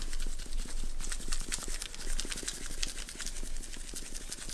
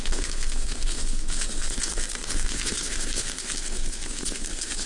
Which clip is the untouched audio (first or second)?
first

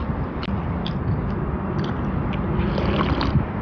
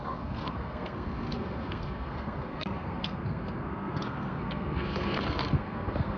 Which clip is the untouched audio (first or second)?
first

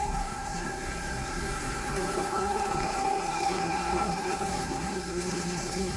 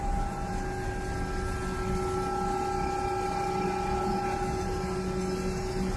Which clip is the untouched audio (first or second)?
second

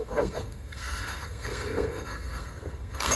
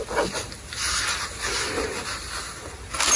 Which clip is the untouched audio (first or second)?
second